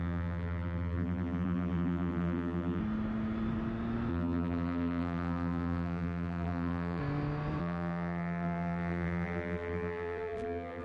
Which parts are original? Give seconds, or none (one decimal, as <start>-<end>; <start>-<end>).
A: 2.8-4.1; 7.0-7.6